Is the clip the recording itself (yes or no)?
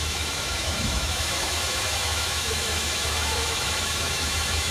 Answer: no